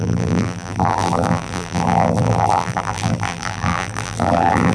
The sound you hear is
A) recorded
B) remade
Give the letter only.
B